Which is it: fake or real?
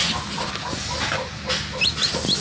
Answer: real